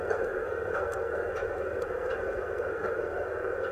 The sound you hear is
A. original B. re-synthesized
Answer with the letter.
B